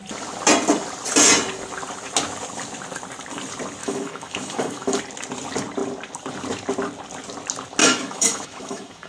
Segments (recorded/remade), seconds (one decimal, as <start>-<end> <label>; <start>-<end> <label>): 0.0-3.8 recorded; 3.8-5.0 remade; 5.0-7.8 recorded; 7.8-9.1 remade